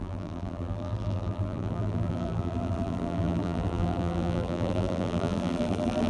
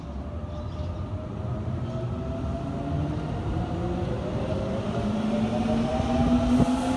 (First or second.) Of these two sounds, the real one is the second